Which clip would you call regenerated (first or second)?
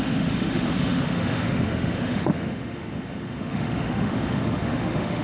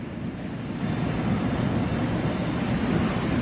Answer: first